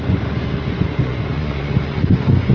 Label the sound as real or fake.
fake